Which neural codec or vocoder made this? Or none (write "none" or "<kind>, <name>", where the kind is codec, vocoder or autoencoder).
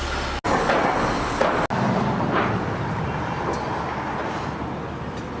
none